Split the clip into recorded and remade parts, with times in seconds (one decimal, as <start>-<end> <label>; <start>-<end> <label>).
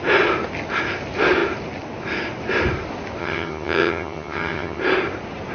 0.0-3.2 recorded; 3.2-4.8 remade; 4.8-5.5 recorded